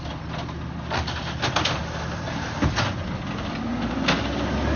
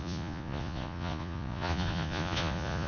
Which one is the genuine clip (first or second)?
first